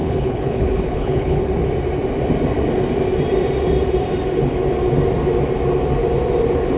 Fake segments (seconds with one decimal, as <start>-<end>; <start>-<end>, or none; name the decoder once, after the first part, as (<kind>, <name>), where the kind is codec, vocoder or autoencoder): 0.0-1.4 (codec, HILCodec)